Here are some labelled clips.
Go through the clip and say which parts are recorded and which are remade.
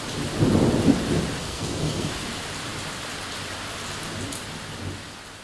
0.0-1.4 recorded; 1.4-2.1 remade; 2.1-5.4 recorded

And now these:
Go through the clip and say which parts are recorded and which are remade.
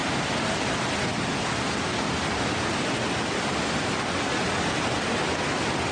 0.0-5.9 recorded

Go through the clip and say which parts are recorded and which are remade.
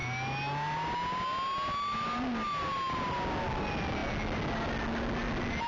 0.0-5.7 recorded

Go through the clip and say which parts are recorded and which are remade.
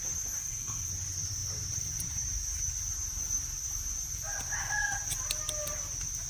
0.0-0.4 recorded; 0.4-0.9 remade; 0.9-6.3 recorded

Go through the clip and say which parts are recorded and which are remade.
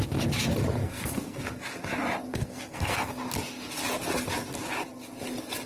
0.0-0.8 recorded; 0.8-1.4 remade; 1.4-2.3 recorded; 2.3-3.1 remade; 3.1-5.7 recorded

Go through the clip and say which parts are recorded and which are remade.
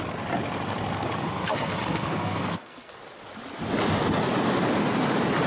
0.0-1.2 recorded; 1.2-3.0 remade; 3.0-5.5 recorded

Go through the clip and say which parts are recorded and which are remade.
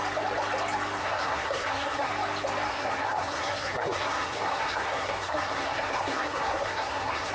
0.0-1.0 recorded; 1.0-2.1 remade; 2.1-2.7 recorded; 2.7-7.3 remade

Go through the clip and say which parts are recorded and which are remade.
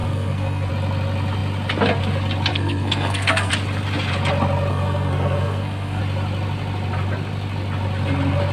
0.0-0.7 remade; 0.7-2.5 recorded; 2.5-3.5 remade; 3.5-4.7 recorded; 4.7-6.0 remade; 6.0-8.5 recorded